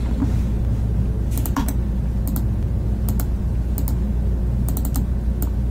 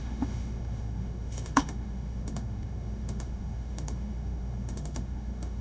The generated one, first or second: second